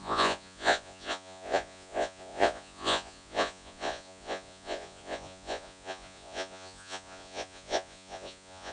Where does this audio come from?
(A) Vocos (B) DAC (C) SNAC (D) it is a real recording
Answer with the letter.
A